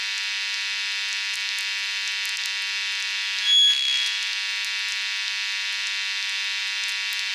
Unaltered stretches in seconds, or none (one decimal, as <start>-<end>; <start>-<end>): 0.0-7.3